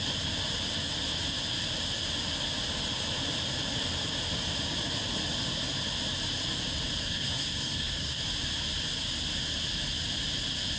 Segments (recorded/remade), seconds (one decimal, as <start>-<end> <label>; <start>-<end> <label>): 0.0-7.0 recorded; 7.0-8.2 remade; 8.2-10.8 recorded